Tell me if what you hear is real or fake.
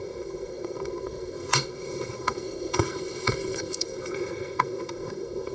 fake